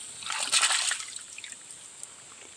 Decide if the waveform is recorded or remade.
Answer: recorded